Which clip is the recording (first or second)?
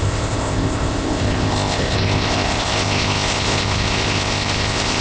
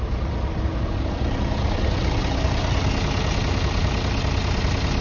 second